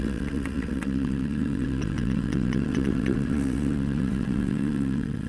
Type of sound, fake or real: fake